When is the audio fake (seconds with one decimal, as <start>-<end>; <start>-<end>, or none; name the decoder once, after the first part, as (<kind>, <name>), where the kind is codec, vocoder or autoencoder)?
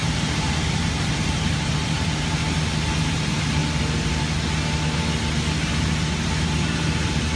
0.0-2.4 (vocoder, BigVGAN v2); 3.0-3.6; 6.3-7.4